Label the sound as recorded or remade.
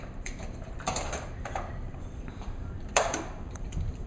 remade